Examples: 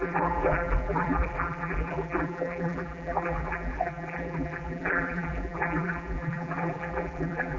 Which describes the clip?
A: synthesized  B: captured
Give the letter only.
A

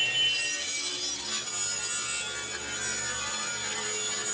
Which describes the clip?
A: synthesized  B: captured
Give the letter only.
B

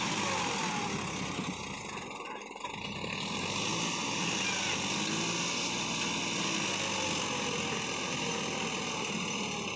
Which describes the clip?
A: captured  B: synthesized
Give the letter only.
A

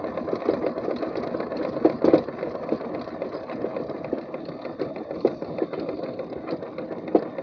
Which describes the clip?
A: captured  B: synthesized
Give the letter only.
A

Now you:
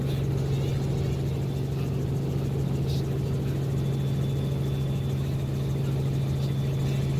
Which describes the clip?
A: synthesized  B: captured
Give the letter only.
B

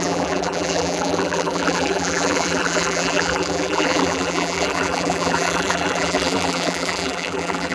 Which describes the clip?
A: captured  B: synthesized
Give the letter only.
B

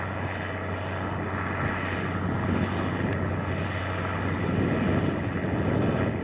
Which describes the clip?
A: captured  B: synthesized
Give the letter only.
A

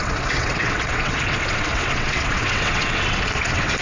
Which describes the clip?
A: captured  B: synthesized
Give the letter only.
B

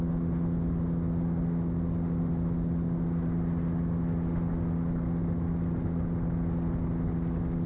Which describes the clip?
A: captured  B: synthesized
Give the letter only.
A